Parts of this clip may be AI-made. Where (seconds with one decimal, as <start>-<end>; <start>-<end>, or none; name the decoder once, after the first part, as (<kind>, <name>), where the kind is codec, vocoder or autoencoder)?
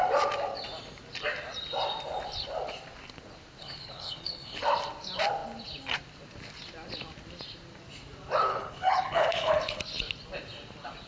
3.6-4.6 (codec, HILCodec); 8.5-9.8